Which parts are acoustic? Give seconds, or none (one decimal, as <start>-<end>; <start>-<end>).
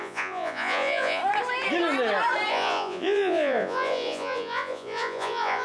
1.2-2.5